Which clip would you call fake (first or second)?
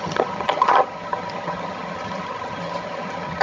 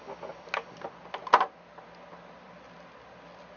first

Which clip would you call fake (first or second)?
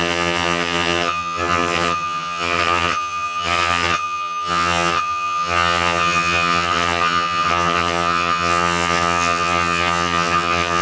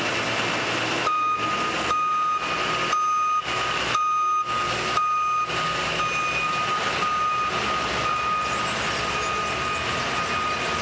first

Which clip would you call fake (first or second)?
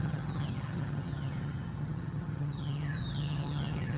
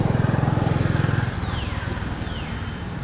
first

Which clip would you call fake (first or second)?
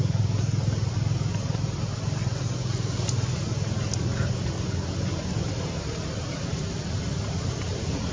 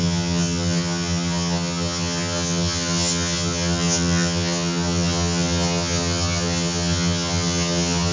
second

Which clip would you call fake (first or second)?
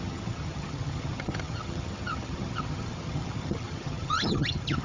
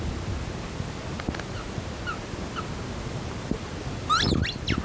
first